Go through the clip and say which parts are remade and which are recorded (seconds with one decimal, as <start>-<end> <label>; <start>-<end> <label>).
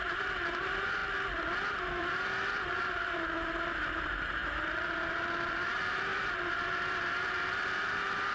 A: 0.0-1.0 remade; 1.0-2.0 recorded; 2.0-8.3 remade